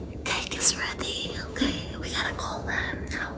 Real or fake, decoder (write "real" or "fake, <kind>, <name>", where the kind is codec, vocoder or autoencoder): fake, codec, DAC